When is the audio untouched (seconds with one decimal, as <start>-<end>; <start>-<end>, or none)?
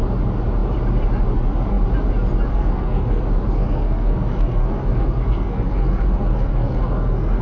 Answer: 0.0-2.5; 3.2-3.6